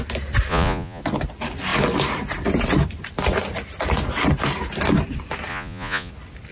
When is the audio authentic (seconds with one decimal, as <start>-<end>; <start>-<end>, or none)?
0.0-0.5; 1.0-5.5; 6.1-6.5